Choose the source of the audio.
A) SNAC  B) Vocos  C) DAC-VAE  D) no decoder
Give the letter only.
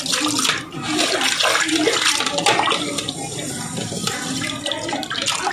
D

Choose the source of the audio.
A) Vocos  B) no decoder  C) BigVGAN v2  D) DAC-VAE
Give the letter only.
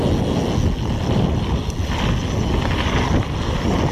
B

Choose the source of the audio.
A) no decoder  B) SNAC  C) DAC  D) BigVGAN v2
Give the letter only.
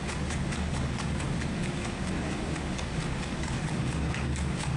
C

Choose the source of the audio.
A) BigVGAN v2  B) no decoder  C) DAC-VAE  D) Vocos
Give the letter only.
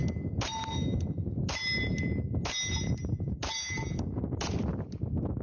B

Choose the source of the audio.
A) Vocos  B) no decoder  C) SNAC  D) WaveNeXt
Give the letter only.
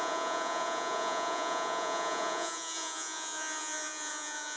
A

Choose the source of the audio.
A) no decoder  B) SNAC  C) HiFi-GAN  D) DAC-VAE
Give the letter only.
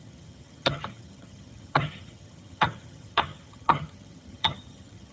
C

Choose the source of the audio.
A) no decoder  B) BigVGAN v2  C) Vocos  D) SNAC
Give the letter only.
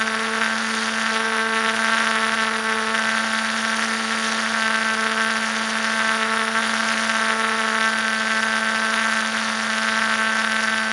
A